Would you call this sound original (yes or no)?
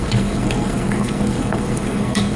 no